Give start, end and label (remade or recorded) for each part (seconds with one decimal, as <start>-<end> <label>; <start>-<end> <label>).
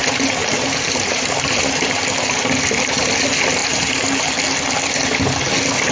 0.0-0.4 recorded; 0.4-2.6 remade; 2.6-3.6 recorded; 3.6-4.4 remade; 4.4-5.9 recorded